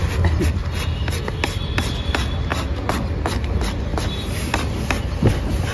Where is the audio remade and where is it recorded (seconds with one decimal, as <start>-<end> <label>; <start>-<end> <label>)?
0.0-0.6 remade; 0.6-1.7 recorded; 1.7-5.7 remade